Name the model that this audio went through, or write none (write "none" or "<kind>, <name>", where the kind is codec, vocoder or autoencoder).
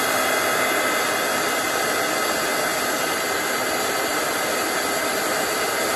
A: none